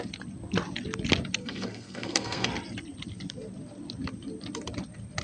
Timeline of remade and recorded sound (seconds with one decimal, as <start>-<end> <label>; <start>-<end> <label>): 0.0-1.4 recorded; 1.4-2.5 remade; 2.5-5.2 recorded